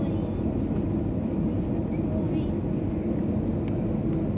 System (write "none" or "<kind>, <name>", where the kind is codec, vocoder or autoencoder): none